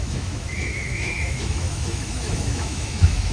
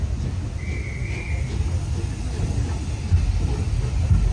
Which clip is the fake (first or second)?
first